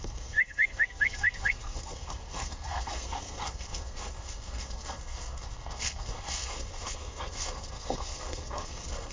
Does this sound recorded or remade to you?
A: remade